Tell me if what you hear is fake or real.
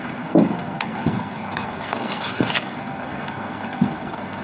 fake